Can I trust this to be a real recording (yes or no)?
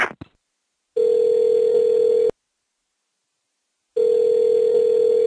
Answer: yes